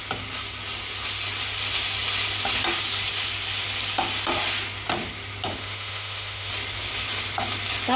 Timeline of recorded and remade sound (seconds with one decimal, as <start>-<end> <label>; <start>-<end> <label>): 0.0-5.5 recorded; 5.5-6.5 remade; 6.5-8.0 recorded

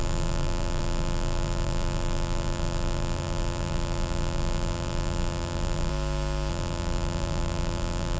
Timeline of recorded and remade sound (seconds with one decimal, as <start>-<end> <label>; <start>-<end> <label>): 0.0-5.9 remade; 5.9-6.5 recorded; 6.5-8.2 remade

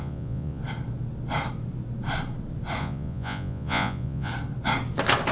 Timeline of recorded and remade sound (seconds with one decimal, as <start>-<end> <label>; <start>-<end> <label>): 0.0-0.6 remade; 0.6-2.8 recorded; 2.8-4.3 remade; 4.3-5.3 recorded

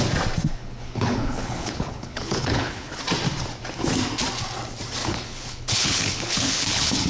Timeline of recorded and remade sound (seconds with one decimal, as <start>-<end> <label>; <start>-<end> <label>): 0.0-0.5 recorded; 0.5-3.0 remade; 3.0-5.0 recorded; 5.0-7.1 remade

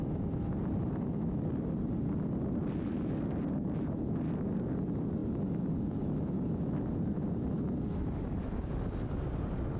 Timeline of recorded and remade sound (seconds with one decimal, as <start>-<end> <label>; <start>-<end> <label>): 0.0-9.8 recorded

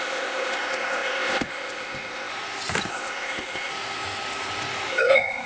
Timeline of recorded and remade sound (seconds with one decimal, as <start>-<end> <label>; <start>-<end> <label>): 0.0-2.3 remade; 2.3-2.9 recorded; 2.9-3.7 remade; 3.7-4.9 recorded; 4.9-5.5 remade